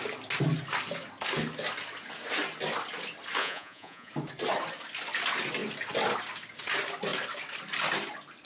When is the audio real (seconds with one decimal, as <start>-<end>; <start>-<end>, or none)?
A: 0.0-3.4; 4.1-8.4